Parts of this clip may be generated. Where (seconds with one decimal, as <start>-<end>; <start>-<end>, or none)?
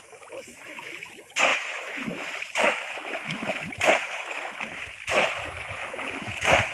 0.0-6.7